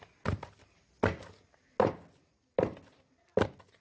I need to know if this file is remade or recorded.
recorded